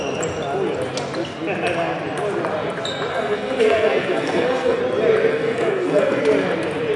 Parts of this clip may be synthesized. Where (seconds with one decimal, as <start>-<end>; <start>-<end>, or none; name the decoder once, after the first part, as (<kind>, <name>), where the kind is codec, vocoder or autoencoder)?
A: 3.1-4.8 (codec, SNAC); 5.3-6.2

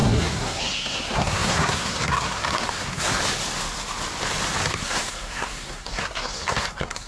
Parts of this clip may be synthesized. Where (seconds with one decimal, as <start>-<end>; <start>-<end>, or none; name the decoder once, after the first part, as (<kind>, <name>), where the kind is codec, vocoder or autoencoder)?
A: 0.0-3.2 (codec, SNAC); 4.7-7.1